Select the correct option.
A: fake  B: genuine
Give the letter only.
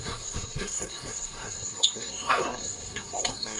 A